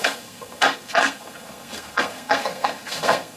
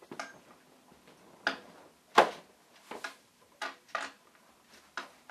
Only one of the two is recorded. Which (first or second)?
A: second